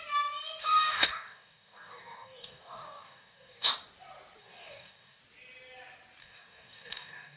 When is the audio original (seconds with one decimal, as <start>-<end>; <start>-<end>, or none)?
0.0-0.6; 3.7-4.4; 5.2-6.2